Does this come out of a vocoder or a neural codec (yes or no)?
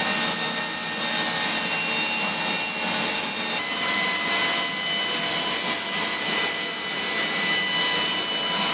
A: no